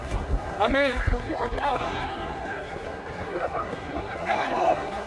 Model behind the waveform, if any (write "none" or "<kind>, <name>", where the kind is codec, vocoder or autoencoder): codec, SNAC